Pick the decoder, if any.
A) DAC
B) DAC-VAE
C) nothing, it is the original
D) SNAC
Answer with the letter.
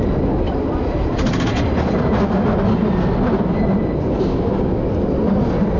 C